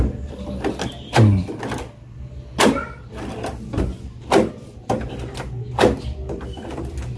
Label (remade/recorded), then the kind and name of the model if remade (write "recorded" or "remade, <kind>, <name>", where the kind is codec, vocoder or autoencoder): recorded